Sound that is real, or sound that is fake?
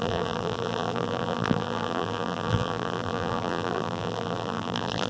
fake